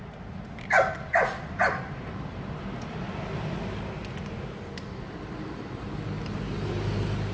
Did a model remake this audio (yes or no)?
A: no